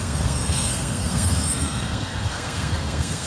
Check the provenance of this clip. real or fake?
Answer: fake